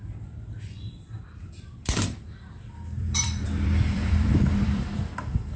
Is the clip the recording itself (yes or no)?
no